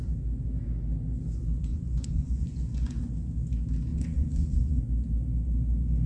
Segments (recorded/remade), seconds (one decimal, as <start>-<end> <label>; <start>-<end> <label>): 0.0-1.7 recorded; 1.7-3.0 remade; 3.0-3.9 recorded; 3.9-4.8 remade; 4.8-6.1 recorded